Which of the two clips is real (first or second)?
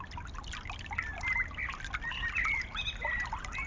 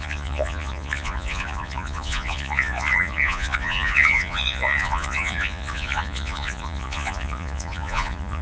first